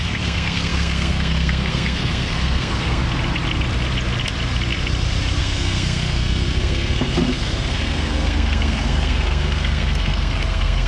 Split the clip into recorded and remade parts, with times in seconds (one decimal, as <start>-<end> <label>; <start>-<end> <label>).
0.0-3.0 remade; 3.0-5.4 recorded; 5.4-10.9 remade